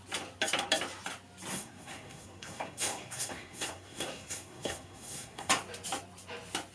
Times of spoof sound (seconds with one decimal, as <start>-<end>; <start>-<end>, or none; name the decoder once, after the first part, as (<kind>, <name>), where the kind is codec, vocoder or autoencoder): 1.5-5.5 (codec, SNAC)